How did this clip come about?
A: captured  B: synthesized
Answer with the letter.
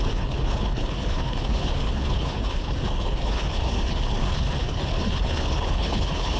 B